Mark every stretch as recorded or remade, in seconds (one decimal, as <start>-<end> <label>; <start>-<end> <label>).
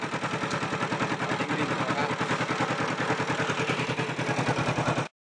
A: 0.0-5.2 recorded